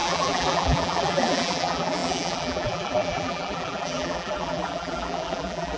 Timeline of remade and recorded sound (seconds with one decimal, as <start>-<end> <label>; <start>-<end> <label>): 0.0-5.8 remade